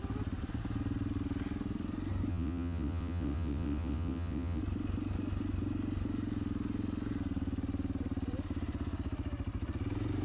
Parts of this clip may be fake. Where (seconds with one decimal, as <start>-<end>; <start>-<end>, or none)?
2.3-4.6

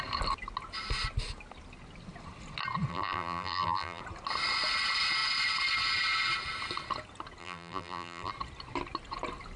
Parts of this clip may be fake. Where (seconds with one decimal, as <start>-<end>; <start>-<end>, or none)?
2.9-4.0; 7.4-8.3